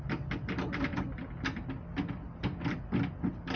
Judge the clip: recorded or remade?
recorded